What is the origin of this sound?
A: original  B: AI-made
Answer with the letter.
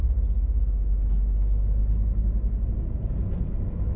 A